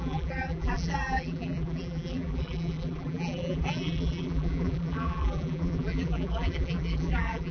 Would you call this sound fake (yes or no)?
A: yes